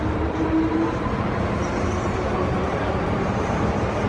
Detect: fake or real fake